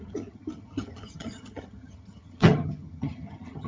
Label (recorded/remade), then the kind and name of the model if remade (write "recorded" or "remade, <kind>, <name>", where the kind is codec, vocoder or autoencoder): remade, vocoder, HiFi-GAN